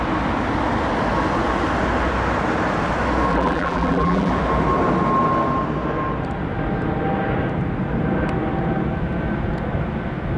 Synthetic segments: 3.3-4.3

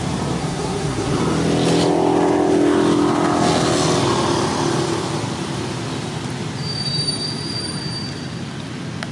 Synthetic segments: 0.4-1.2